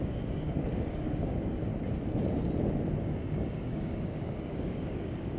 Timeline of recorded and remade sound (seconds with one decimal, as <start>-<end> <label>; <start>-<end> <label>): 0.0-1.7 remade; 1.7-3.0 recorded; 3.0-5.4 remade